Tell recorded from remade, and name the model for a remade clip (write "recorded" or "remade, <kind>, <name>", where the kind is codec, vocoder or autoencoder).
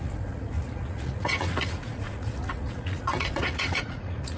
remade, vocoder, Vocos